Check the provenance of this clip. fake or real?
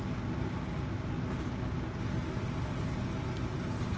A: real